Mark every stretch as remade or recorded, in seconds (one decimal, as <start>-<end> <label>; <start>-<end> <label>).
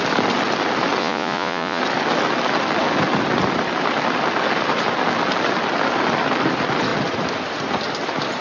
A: 0.0-1.0 recorded; 1.0-1.8 remade; 1.8-8.4 recorded